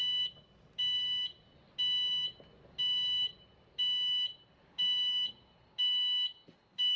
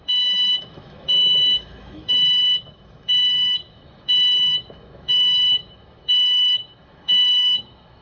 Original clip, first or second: first